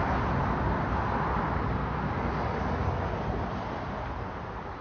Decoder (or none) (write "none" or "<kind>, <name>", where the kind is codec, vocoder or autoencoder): none